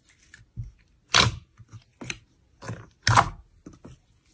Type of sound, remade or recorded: recorded